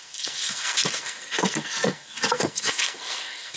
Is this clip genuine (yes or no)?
no